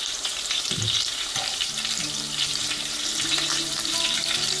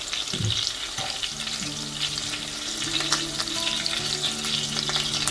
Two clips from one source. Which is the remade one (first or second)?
first